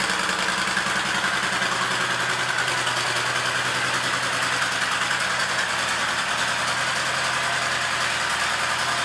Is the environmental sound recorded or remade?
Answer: recorded